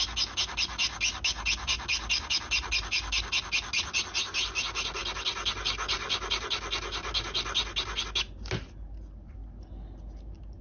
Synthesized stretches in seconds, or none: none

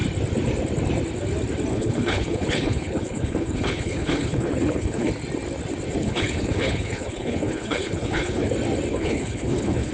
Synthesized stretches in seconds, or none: 1.7-5.1 (codec, HILCodec); 6.0-8.5; 8.9-9.9

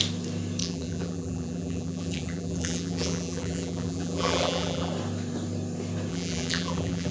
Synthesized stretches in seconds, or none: 0.6-4.9 (vocoder, BigVGAN v2); 6.1-7.1

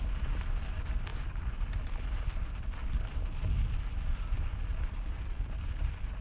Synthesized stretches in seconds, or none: 1.1-4.5 (vocoder, BigVGAN v2)